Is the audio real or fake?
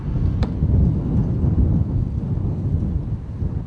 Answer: real